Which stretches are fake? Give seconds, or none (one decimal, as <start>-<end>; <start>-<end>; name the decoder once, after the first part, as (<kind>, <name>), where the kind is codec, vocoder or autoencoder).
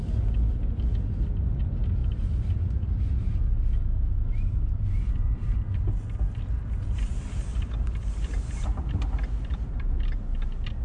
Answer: 7.5-9.9 (vocoder, BigVGAN v2)